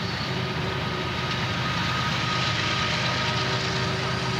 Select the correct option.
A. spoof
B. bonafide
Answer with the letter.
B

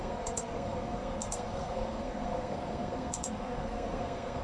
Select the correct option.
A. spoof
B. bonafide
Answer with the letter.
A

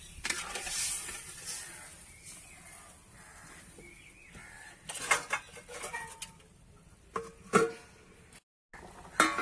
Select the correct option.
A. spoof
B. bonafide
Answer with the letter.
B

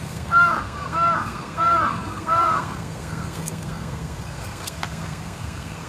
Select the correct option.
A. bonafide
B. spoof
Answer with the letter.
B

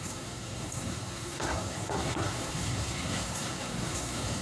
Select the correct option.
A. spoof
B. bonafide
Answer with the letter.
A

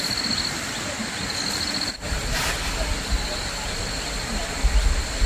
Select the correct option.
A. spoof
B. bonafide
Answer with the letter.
B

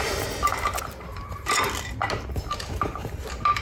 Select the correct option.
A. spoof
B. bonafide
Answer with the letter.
B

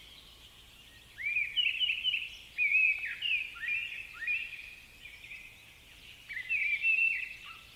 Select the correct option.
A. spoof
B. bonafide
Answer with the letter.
B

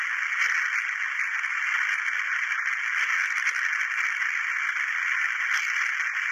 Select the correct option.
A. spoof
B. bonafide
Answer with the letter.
B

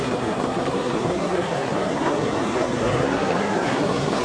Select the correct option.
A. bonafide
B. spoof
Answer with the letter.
B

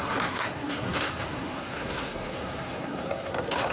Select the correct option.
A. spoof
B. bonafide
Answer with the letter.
A